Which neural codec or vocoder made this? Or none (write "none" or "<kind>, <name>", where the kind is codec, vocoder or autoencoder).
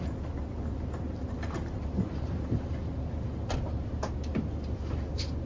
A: none